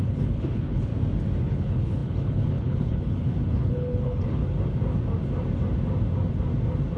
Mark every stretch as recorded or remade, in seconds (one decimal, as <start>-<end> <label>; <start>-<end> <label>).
0.0-0.9 remade; 0.9-1.4 recorded; 1.4-4.4 remade; 4.4-7.0 recorded